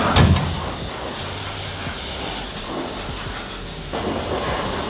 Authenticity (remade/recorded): recorded